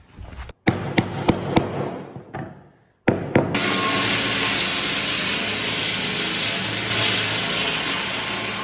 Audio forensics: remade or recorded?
recorded